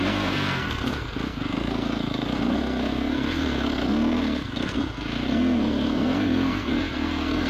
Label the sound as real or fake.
fake